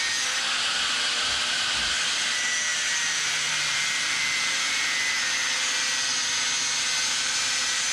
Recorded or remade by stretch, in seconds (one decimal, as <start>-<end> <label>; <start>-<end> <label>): 0.0-7.9 recorded

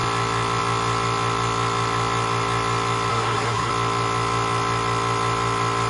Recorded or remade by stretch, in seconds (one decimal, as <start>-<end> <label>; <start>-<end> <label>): 0.0-3.1 recorded; 3.1-3.7 remade; 3.7-5.9 recorded

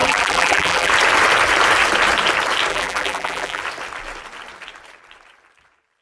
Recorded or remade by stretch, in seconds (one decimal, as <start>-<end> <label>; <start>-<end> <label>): 0.0-0.9 remade; 0.9-2.7 recorded; 2.7-3.6 remade; 3.6-6.0 recorded